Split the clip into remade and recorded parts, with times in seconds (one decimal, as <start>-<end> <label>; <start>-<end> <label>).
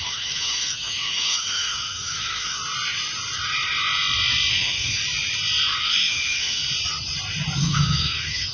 0.0-2.6 remade; 2.6-4.5 recorded; 4.5-5.0 remade; 5.0-5.8 recorded; 5.8-6.6 remade; 6.6-7.6 recorded; 7.6-8.5 remade